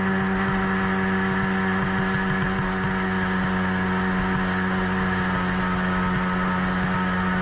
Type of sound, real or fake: real